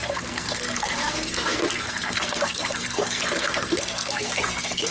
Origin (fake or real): fake